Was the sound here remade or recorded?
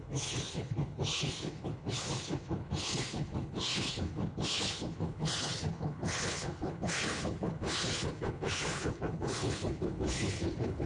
remade